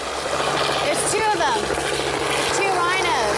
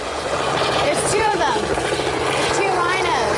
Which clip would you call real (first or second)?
first